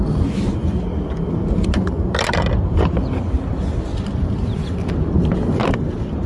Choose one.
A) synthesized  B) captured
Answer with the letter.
B